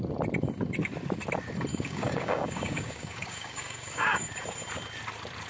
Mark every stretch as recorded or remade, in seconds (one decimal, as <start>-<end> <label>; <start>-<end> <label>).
0.0-1.7 recorded; 1.7-4.3 remade; 4.3-5.5 recorded